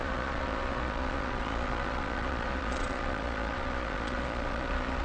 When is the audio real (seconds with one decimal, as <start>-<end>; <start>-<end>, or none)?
none